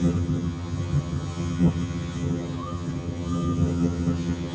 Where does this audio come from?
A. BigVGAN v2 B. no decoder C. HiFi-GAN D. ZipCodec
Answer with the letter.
C